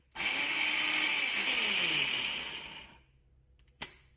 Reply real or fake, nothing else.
real